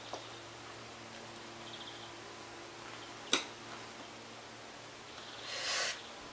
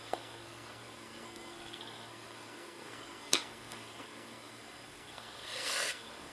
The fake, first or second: second